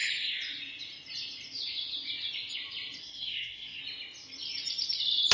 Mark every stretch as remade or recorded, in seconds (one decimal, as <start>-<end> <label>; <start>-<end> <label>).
0.0-3.0 recorded; 3.0-3.8 remade; 3.8-5.3 recorded

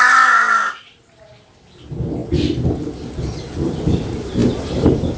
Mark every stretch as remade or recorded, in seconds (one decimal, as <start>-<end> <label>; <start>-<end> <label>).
0.0-5.2 recorded